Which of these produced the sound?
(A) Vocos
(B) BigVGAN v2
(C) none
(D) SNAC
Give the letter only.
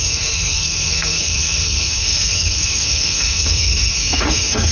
D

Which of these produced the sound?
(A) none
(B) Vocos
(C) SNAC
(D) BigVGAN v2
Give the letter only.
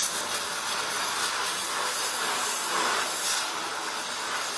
A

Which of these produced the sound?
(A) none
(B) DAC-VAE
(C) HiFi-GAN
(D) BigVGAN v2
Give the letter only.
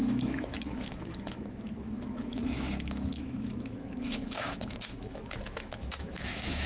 B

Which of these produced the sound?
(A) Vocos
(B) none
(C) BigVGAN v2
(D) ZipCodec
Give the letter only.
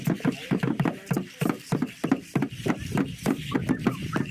C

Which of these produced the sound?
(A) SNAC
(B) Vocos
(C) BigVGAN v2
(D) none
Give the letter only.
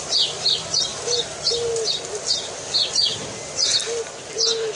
D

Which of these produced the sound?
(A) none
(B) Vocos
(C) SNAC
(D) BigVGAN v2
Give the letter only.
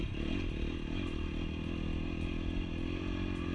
A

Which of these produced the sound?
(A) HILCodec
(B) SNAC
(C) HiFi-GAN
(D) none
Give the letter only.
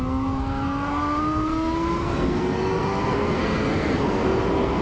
B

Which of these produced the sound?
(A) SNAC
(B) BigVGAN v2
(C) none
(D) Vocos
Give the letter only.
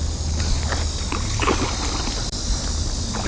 C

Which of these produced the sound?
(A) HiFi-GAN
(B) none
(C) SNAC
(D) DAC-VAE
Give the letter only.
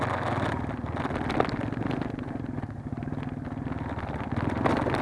B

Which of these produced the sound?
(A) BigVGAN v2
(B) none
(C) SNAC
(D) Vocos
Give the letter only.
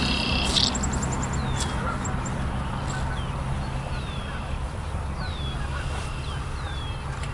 B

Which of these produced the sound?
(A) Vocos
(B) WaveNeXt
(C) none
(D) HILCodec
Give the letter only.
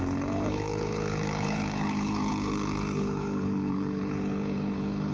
D